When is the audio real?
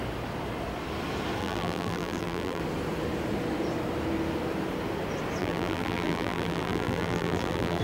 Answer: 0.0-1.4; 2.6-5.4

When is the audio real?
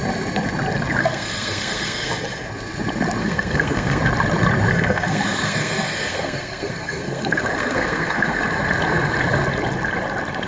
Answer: 0.0-1.0; 2.1-3.2; 4.0-4.7; 8.4-10.5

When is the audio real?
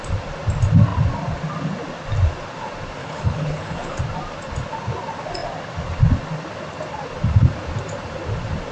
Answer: 0.0-3.0; 4.0-8.7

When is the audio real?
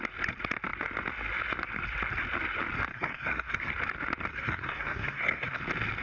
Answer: 0.0-2.9; 3.7-4.3; 5.6-6.0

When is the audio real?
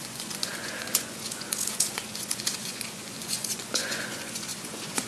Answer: none